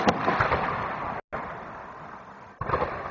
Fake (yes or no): no